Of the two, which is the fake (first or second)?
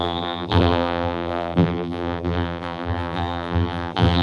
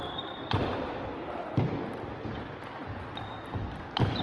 first